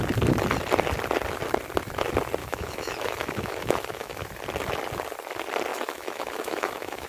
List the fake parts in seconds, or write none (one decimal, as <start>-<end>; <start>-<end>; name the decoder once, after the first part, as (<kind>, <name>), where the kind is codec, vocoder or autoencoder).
2.4-4.4 (autoencoder, DAC-VAE); 5.7-7.1